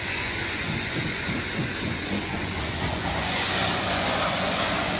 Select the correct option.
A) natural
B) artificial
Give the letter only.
B